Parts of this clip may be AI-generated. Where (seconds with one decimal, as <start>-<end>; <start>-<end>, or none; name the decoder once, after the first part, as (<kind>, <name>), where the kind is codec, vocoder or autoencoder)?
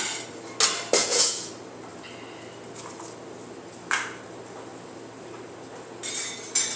1.0-1.5 (vocoder, Vocos)